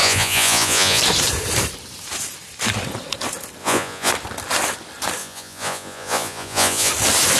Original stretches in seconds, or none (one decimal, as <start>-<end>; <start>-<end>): 1.0-3.6; 4.1-5.2; 6.9-7.4